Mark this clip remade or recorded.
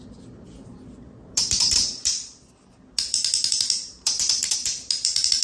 recorded